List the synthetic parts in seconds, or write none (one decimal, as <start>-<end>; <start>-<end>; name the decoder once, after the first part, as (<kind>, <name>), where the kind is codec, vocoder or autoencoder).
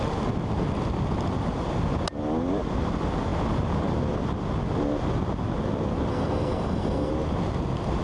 6.1-7.1 (codec, SNAC)